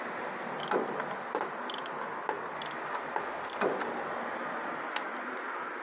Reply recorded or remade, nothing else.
recorded